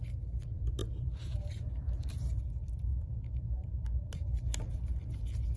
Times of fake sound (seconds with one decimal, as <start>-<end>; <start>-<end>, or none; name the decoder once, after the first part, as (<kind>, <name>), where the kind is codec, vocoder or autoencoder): 0.8-2.4 (vocoder, BigVGAN v2); 2.9-4.4